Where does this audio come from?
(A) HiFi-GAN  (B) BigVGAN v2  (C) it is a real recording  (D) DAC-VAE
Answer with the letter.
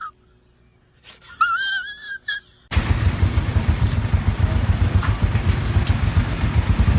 C